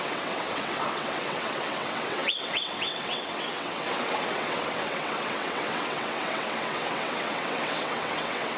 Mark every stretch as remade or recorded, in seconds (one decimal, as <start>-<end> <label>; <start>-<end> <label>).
0.0-8.6 remade